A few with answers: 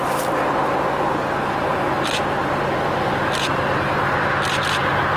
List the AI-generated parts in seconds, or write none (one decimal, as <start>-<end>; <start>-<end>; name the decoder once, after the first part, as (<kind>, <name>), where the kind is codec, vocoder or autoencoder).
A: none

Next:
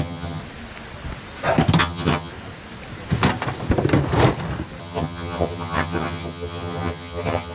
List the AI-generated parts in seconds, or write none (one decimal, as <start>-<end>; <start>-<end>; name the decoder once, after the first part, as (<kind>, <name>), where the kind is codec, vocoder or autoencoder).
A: 0.0-0.4 (vocoder, HiFi-GAN); 1.8-2.3; 4.8-7.5

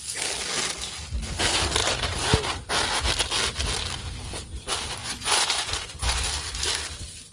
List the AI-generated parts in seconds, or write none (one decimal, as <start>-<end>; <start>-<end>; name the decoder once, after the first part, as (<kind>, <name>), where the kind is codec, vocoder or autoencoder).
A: 5.0-6.2 (vocoder, Vocos)